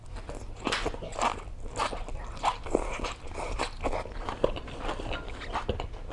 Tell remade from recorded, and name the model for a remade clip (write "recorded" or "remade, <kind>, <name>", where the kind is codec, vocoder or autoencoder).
recorded